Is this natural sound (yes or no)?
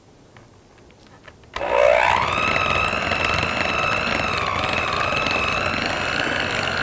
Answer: yes